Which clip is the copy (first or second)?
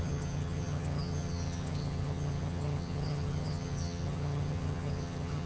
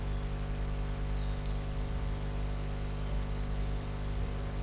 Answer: first